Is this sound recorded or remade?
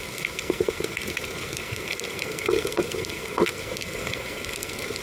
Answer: remade